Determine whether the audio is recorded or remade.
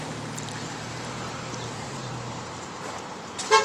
remade